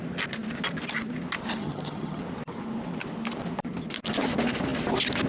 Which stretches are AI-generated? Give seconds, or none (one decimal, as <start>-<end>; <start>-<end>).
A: 1.6-2.2